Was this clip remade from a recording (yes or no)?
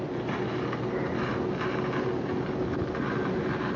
no